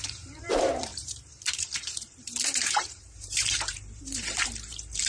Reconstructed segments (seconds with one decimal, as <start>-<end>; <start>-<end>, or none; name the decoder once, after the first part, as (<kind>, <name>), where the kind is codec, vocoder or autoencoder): 0.0-5.1 (vocoder, BigVGAN v2)